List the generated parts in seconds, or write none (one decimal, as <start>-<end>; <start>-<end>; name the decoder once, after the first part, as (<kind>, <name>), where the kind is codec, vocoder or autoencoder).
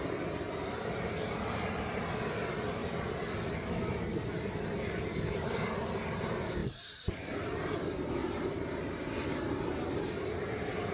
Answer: 6.6-7.6 (vocoder, BigVGAN v2); 8.2-8.8